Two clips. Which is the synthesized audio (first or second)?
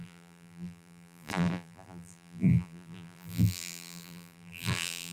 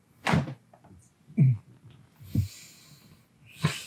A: first